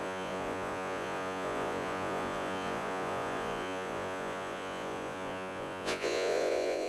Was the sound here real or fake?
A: fake